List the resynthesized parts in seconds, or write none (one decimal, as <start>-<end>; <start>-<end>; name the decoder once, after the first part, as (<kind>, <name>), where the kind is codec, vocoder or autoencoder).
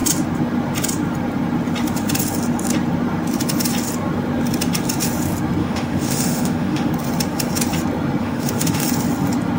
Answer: 5.6-6.9 (autoencoder, DAC-VAE); 8.2-8.9